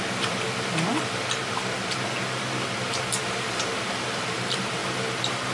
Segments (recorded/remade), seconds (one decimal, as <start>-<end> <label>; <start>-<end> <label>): 0.0-1.4 remade; 1.4-3.1 recorded; 3.1-4.8 remade; 4.8-5.5 recorded